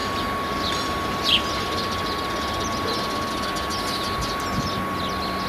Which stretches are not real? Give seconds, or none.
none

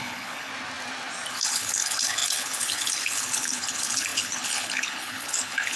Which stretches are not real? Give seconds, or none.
0.0-0.5 (codec, HILCodec); 1.3-5.8

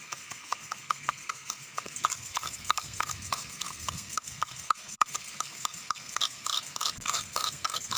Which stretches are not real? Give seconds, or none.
0.0-8.0 (codec, SNAC)

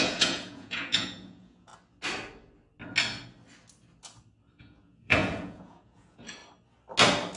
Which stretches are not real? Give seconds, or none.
0.0-1.7 (vocoder, Vocos); 4.6-6.4

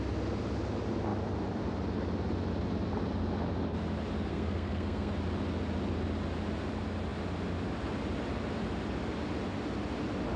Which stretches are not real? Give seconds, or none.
4.3-5.1 (codec, SNAC)

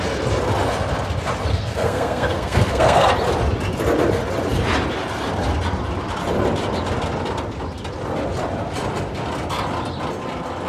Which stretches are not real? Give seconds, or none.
1.5-3.1 (codec, SNAC)